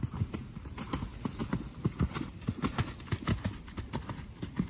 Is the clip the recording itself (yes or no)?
yes